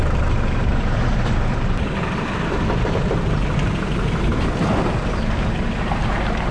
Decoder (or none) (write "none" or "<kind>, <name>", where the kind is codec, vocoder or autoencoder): vocoder, BigVGAN v2